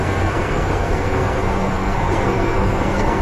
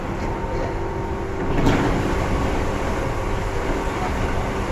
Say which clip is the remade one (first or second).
first